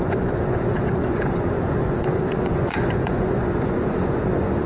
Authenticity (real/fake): fake